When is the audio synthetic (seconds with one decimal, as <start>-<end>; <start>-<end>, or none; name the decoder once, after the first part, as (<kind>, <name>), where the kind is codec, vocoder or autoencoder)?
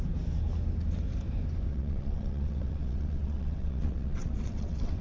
1.7-5.0 (vocoder, WaveNeXt)